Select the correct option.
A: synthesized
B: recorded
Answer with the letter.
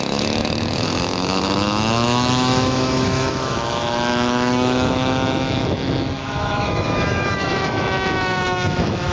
A